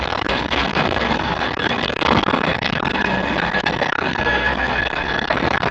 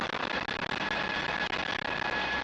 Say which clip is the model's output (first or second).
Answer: first